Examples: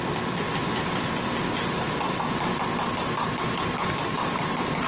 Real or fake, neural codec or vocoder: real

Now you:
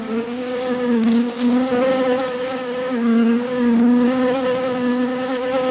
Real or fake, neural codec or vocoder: fake, codec, DAC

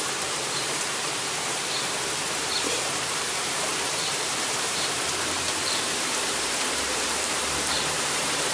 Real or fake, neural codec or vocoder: fake, vocoder, BigVGAN v2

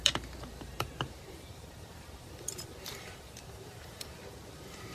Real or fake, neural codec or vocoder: fake, vocoder, BigVGAN v2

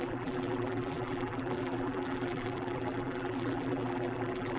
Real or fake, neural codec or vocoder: fake, vocoder, BigVGAN v2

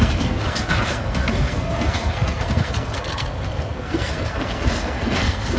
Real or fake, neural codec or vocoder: fake, codec, SNAC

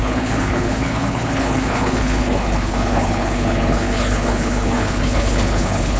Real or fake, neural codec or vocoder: fake, codec, HILCodec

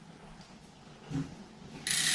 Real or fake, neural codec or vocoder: real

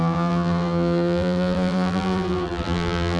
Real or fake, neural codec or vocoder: fake, vocoder, BigVGAN v2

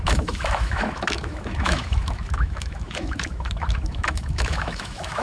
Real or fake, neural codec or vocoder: fake, autoencoder, DAC-VAE